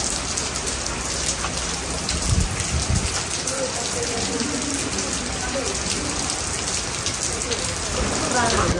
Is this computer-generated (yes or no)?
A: no